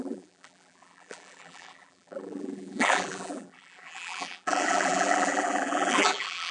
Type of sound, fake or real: fake